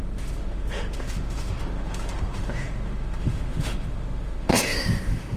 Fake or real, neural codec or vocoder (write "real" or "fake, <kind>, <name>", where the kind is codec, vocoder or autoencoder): fake, autoencoder, DAC-VAE